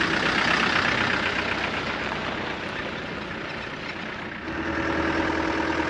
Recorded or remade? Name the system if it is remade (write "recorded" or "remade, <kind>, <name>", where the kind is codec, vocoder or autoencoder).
recorded